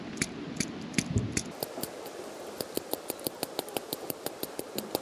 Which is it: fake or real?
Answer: real